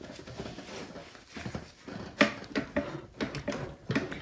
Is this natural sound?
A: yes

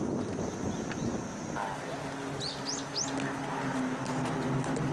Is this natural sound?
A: yes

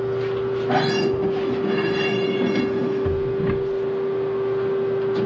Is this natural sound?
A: yes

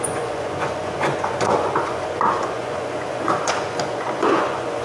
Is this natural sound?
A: no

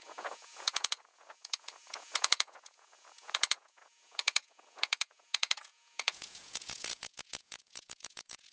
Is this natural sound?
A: no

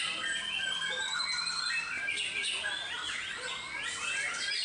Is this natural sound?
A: yes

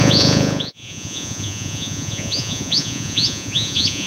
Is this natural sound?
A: no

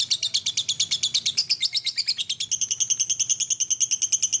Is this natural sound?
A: yes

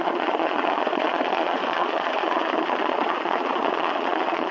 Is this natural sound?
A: no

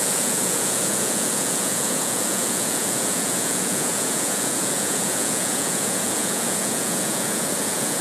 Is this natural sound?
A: no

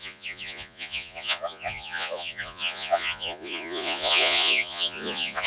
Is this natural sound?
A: no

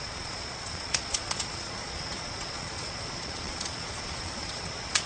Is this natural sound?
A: no